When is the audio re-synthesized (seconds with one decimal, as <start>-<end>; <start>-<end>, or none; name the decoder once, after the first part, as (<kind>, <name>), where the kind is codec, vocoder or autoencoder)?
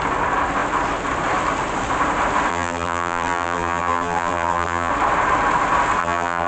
2.5-4.9 (vocoder, BigVGAN v2); 6.0-6.5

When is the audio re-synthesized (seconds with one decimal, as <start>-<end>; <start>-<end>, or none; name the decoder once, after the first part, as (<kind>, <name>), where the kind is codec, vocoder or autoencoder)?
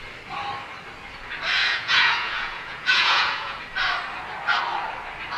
1.6-3.6 (vocoder, Vocos)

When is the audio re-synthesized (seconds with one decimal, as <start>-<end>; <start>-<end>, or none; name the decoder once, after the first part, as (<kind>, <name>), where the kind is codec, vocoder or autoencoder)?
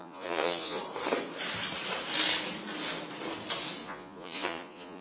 0.0-0.8 (vocoder, Vocos); 3.8-5.0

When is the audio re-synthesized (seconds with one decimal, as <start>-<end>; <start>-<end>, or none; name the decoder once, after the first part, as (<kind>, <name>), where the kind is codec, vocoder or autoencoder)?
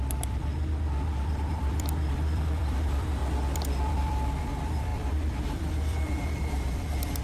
0.0-0.5 (vocoder, BigVGAN v2); 1.3-3.2; 4.0-7.2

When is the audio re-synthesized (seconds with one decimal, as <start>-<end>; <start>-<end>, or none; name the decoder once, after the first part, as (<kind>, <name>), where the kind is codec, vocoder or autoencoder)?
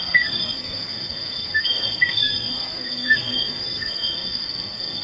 0.0-5.0 (codec, SNAC)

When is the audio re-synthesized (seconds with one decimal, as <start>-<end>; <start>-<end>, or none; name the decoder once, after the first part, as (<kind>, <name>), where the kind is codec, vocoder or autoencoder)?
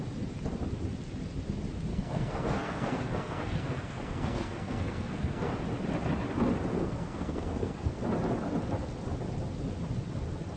1.9-5.5 (codec, SNAC); 6.7-8.0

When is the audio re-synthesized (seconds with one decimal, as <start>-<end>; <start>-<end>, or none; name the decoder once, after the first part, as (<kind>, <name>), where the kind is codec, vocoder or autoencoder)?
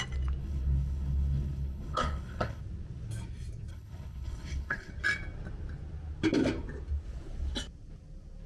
0.4-2.6 (codec, HILCodec); 3.7-4.9